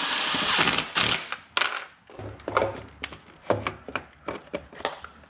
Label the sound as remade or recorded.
recorded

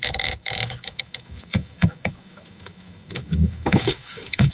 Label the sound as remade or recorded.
remade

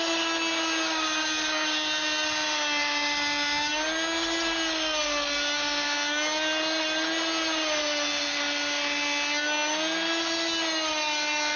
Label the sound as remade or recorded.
recorded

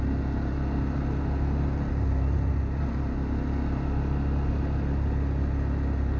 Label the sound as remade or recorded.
recorded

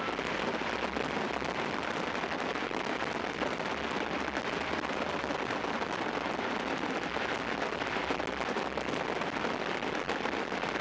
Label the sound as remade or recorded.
recorded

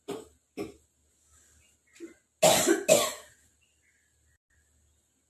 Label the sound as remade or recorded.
recorded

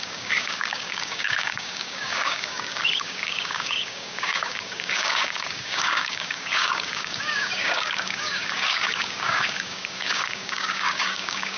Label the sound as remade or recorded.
remade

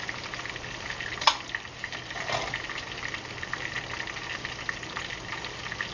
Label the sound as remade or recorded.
recorded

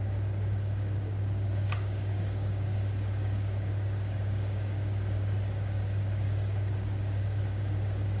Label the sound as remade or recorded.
remade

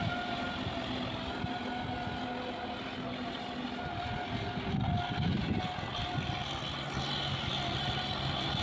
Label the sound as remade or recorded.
recorded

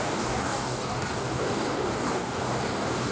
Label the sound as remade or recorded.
remade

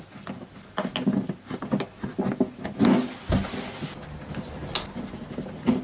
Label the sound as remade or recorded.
recorded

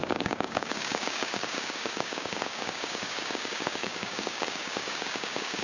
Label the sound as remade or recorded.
remade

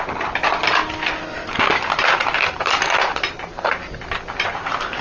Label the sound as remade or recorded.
recorded